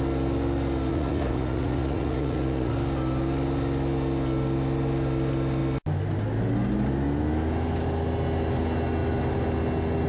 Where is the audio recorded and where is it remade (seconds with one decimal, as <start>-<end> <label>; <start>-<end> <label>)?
0.0-0.9 recorded; 0.9-2.7 remade; 2.7-10.1 recorded